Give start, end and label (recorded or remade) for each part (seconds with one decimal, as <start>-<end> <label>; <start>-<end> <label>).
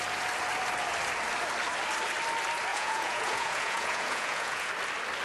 0.0-2.7 recorded; 2.7-4.7 remade; 4.7-5.2 recorded